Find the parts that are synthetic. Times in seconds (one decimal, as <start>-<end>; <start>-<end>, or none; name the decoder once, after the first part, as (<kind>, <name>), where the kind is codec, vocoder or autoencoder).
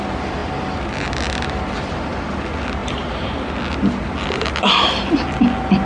2.8-3.5 (vocoder, BigVGAN v2)